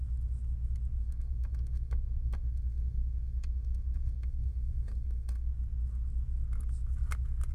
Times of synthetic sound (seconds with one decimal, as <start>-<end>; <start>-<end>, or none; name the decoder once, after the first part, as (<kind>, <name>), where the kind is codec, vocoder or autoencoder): 1.0-5.5 (codec, SNAC)